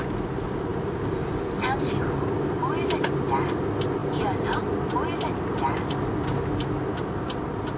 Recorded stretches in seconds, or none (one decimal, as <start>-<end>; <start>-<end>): 0.0-0.7; 1.5-7.8